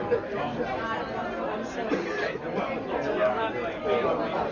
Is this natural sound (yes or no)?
yes